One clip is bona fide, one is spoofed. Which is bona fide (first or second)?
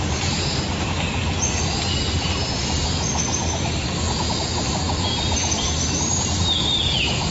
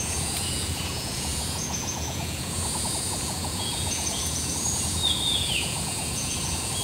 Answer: first